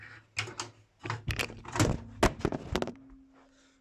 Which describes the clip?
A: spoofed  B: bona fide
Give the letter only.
B